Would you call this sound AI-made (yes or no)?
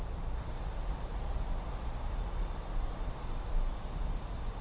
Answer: no